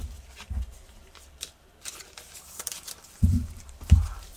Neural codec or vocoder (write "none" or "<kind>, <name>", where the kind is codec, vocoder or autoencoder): vocoder, BigVGAN v2